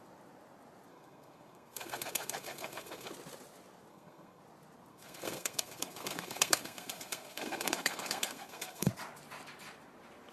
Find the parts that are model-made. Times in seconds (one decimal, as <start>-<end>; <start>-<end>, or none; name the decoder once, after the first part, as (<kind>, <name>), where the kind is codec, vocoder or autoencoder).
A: 0.9-3.1 (codec, SNAC); 3.9-4.4; 4.9-8.9